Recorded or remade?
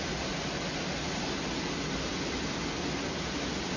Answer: recorded